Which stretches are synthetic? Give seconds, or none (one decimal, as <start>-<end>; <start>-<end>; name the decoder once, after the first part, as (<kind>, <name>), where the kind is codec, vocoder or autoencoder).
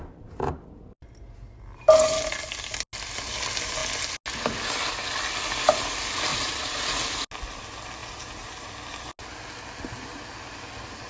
0.0-0.5 (vocoder, BigVGAN v2); 6.3-6.8; 8.0-8.7